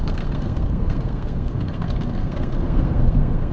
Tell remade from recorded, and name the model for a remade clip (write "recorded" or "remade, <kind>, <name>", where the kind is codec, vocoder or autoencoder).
remade, codec, SNAC